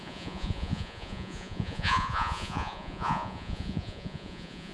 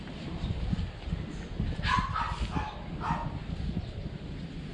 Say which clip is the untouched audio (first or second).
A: second